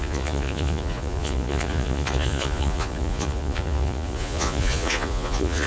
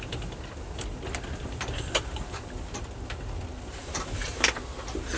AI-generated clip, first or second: first